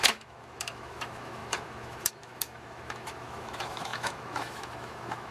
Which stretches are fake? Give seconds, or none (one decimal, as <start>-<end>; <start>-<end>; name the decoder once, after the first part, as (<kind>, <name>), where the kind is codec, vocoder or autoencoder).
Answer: 0.0-5.3 (autoencoder, DAC-VAE)